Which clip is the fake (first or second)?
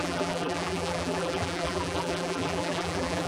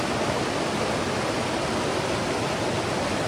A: first